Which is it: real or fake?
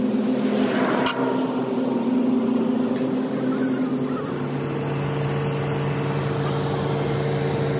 real